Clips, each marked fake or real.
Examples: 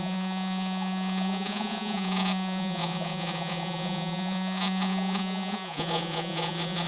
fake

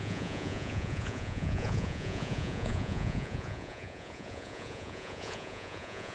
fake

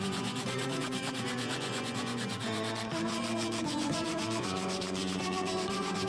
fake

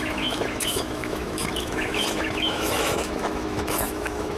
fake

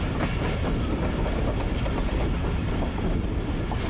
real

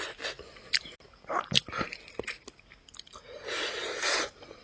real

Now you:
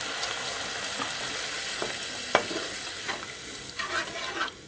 real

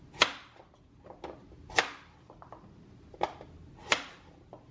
real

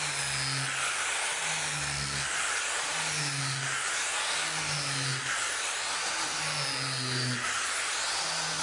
real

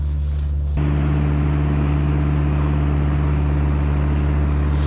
real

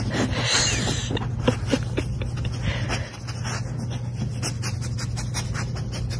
real